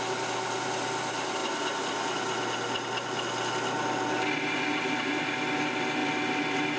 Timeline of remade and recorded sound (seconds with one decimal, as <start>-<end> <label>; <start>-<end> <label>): 0.0-6.8 recorded